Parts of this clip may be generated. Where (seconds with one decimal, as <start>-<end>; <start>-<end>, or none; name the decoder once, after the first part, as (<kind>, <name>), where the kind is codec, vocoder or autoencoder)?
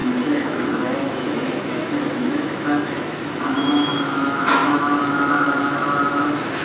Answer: 0.0-6.6 (autoencoder, DAC-VAE)